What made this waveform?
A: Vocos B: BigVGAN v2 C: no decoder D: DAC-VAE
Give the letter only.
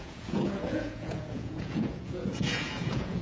A